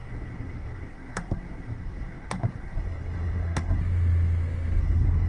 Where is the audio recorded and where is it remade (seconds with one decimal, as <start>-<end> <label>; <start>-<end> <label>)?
0.0-3.8 remade; 3.8-4.8 recorded; 4.8-5.3 remade